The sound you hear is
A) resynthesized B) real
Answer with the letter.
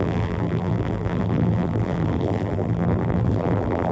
A